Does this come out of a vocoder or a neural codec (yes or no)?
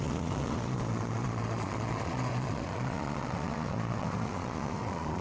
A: yes